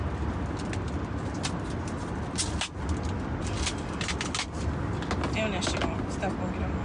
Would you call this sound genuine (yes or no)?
yes